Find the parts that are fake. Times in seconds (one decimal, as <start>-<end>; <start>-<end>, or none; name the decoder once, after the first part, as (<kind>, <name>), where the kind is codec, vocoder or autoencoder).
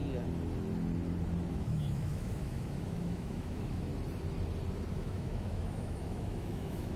1.5-3.9 (autoencoder, DAC-VAE); 4.9-7.0